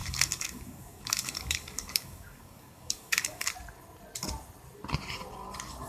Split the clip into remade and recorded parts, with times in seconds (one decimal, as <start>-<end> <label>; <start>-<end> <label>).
0.0-3.5 remade; 3.5-5.9 recorded